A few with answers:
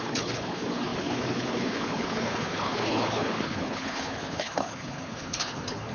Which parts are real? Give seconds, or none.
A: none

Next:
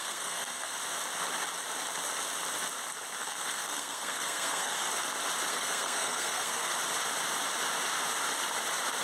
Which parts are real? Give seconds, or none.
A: 0.7-3.2; 4.9-5.5; 6.7-9.0

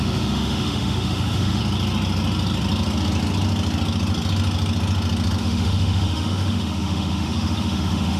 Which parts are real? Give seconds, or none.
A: 1.6-5.4

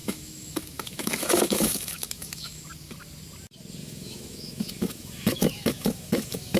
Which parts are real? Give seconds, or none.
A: 2.6-3.8

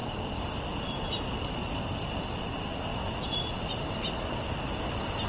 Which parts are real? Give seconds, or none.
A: 0.0-2.9; 3.4-5.3

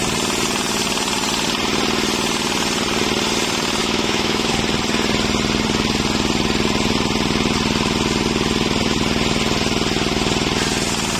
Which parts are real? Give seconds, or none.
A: 0.0-3.8; 4.5-11.2

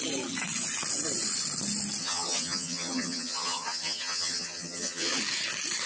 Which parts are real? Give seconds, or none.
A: 0.0-2.0; 5.1-5.9

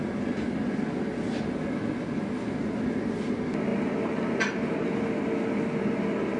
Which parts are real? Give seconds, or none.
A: 0.0-6.4